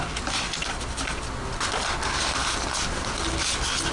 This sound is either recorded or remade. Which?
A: recorded